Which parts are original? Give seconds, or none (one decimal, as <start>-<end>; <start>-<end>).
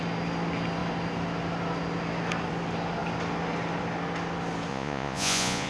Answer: 0.0-4.7